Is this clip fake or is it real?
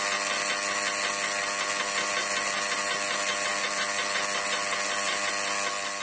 real